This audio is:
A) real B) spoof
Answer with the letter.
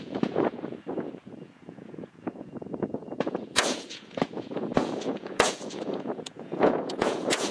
B